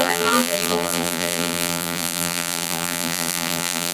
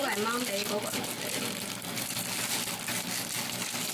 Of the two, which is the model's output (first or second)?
first